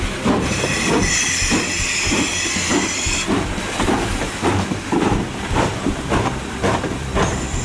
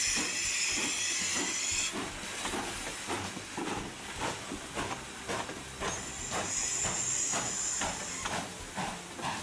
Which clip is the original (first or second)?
second